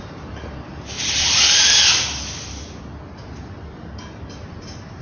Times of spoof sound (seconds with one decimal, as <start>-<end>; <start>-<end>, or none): 0.0-1.8; 4.5-5.0

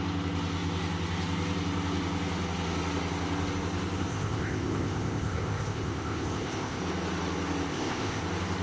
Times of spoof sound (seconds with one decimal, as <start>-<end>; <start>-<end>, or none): 4.1-6.8; 7.7-8.2

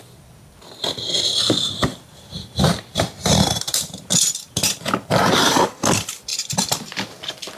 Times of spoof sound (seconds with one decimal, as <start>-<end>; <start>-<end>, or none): 1.9-5.6; 6.3-7.6

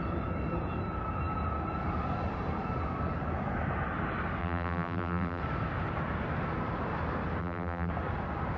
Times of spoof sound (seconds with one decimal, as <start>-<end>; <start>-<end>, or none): 4.4-5.4; 7.4-7.9

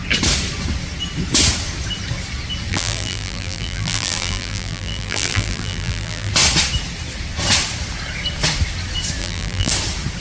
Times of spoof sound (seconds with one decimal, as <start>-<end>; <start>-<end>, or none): 2.7-6.3; 9.2-9.7

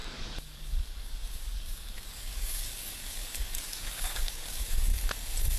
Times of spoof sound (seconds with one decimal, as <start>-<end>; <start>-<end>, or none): 0.0-4.9

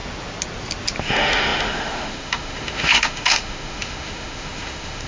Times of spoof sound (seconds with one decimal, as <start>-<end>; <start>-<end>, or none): 1.0-5.1